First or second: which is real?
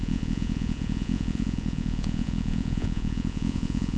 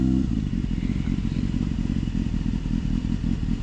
second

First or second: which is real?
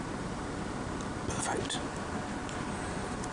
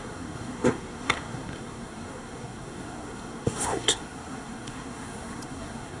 first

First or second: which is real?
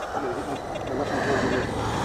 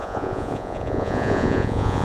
first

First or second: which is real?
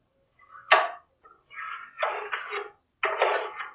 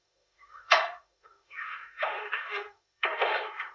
first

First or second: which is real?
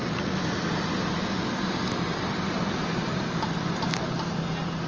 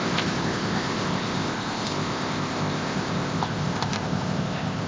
first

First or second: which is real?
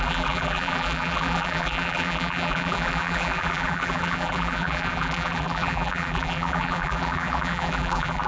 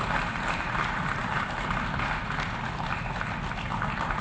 second